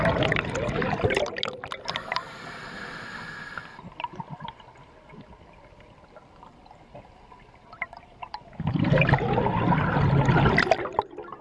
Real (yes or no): yes